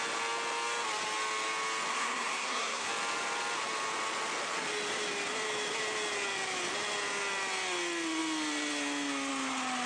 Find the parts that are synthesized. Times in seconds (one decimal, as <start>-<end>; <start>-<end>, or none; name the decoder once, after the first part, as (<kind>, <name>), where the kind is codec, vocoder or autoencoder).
1.9-2.9 (codec, SNAC)